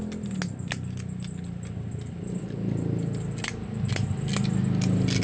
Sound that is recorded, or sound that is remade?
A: recorded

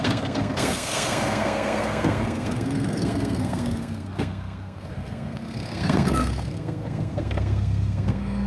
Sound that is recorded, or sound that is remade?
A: remade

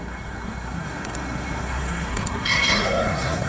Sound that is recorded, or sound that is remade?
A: remade